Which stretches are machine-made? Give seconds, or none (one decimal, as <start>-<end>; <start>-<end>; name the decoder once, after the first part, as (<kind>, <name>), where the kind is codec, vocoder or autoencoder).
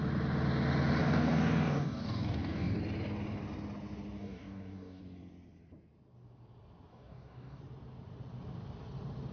1.0-2.8 (codec, DAC); 4.2-5.0; 6.9-7.6